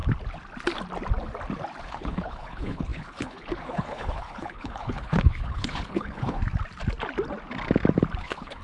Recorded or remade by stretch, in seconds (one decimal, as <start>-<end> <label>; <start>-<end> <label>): 0.0-1.8 recorded; 1.8-6.4 remade; 6.4-8.2 recorded; 8.2-8.6 remade